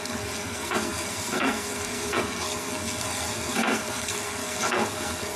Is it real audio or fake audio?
fake